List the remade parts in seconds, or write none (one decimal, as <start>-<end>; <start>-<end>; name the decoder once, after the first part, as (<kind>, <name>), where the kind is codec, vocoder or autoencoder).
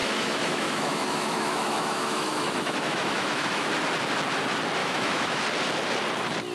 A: 0.0-3.7 (autoencoder, DAC-VAE); 4.8-5.4